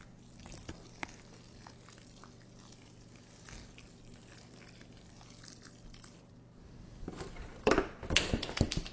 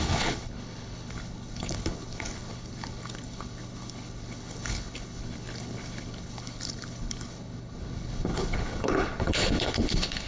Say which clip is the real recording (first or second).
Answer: first